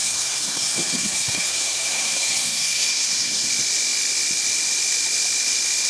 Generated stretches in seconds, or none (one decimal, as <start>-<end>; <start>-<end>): 0.0-3.5